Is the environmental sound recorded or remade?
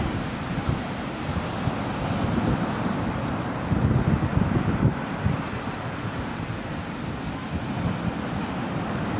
recorded